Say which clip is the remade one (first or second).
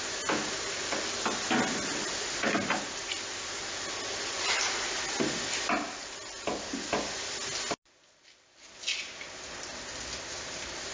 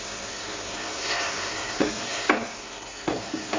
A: second